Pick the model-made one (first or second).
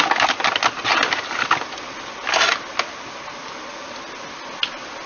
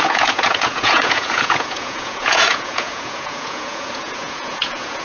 second